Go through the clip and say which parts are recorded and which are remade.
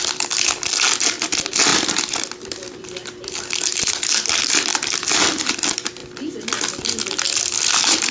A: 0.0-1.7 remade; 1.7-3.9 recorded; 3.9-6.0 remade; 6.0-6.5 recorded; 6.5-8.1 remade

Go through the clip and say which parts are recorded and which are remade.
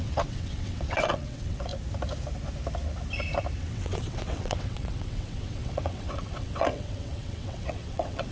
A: 0.0-1.7 remade; 1.7-3.6 recorded; 3.6-8.3 remade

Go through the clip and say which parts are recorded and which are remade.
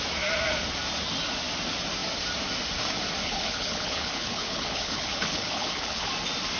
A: 0.0-3.2 recorded; 3.2-6.1 remade; 6.1-6.6 recorded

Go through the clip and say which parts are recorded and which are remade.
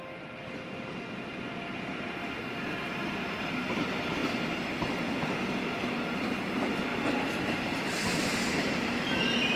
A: 0.0-6.9 recorded; 6.9-9.6 remade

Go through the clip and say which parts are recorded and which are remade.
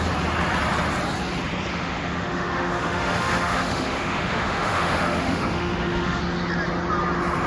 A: 0.0-1.7 recorded; 1.7-6.2 remade; 6.2-7.5 recorded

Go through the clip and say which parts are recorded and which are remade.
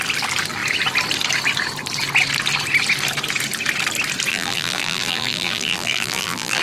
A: 0.0-4.3 recorded; 4.3-6.6 remade